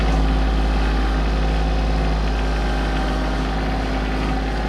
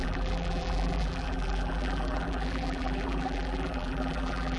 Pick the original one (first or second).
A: first